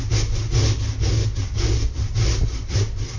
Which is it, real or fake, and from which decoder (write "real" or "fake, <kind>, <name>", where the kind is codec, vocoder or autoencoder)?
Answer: real